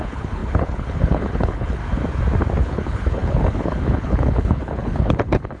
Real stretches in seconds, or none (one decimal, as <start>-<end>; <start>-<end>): 1.8-2.6